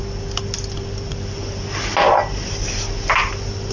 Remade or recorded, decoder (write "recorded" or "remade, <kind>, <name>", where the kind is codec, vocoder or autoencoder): recorded